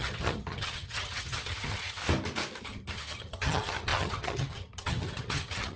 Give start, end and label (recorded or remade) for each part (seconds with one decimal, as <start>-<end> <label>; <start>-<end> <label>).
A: 0.0-2.0 remade; 2.0-2.6 recorded; 2.6-5.8 remade